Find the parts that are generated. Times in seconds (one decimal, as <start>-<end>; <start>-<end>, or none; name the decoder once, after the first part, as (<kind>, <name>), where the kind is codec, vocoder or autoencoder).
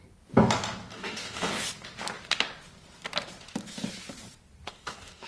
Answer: 0.9-1.5 (codec, DAC); 4.7-5.3